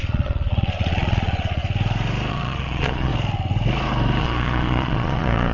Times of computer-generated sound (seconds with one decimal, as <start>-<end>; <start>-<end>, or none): 0.0-1.6; 2.3-3.1; 4.2-5.5